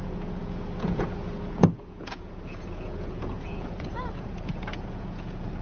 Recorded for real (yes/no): no